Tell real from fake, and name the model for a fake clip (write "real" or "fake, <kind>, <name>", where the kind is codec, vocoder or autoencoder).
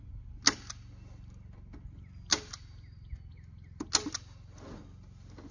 real